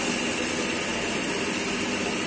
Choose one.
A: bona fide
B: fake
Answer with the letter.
A